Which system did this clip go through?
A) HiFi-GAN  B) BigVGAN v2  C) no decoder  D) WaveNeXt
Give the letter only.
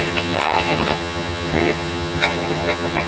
A